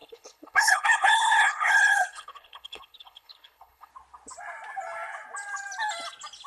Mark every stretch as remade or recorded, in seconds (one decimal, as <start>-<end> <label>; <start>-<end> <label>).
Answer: 0.0-3.9 remade; 3.9-6.5 recorded